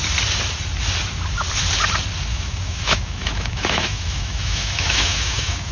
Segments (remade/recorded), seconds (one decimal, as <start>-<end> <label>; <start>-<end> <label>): 0.0-2.3 recorded; 2.3-5.7 remade